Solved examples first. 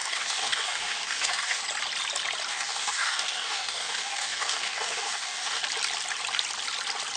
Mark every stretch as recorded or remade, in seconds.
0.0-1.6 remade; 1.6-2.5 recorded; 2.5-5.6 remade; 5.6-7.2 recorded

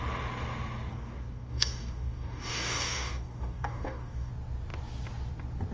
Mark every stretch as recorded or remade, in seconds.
0.0-0.9 recorded; 0.9-4.3 remade; 4.3-5.7 recorded

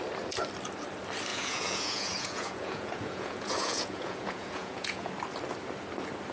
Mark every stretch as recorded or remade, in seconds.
0.0-1.3 recorded; 1.3-5.1 remade; 5.1-6.3 recorded

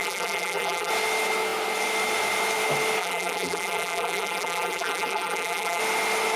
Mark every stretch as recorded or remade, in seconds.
0.0-0.9 remade; 0.9-3.0 recorded; 3.0-5.8 remade; 5.8-6.4 recorded

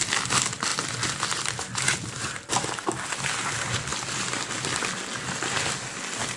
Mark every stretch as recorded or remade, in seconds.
0.0-6.4 recorded

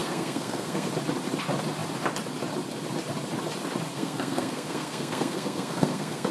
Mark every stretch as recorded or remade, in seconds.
0.0-0.9 remade; 0.9-3.9 recorded; 3.9-6.3 remade

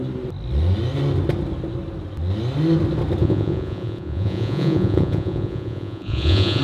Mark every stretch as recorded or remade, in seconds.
0.0-3.2 recorded; 3.2-6.6 remade